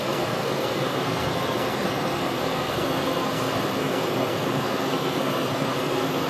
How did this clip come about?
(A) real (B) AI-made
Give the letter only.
B